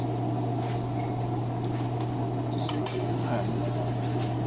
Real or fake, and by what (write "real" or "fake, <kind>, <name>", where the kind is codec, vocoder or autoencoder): real